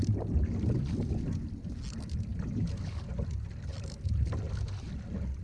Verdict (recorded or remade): recorded